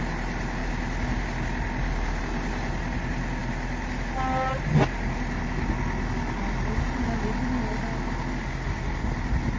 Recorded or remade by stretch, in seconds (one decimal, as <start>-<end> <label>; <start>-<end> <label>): 0.0-9.6 recorded